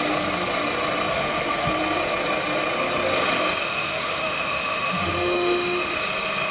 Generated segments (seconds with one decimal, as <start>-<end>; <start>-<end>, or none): 1.1-1.7; 3.6-6.0